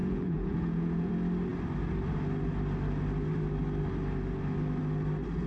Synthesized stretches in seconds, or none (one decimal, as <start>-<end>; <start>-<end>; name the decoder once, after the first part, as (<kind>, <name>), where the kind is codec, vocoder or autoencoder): 0.0-1.1 (vocoder, Vocos)